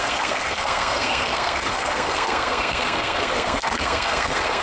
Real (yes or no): no